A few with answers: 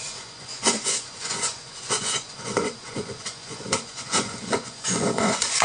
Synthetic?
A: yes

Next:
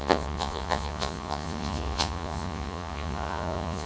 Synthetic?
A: yes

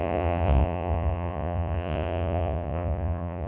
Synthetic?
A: yes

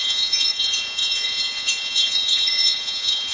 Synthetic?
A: yes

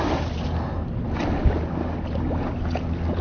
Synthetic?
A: no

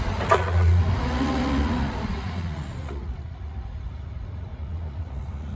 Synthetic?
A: yes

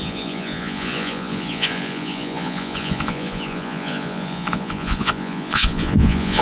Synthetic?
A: yes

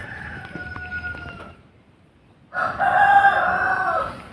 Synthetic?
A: no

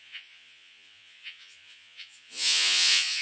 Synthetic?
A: yes